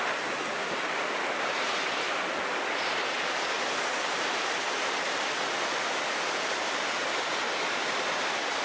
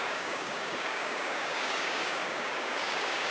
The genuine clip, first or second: first